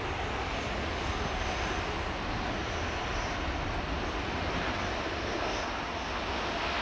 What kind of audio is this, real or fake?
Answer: real